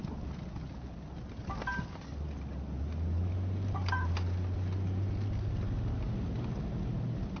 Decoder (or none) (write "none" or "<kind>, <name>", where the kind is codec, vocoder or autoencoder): none